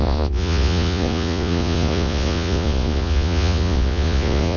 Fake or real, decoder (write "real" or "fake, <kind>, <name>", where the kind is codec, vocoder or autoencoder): fake, vocoder, Vocos